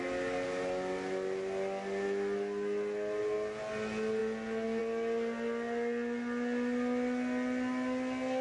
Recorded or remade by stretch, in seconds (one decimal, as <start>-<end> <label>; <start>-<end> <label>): 0.0-8.4 recorded